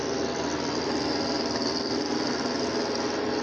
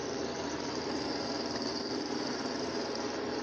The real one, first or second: first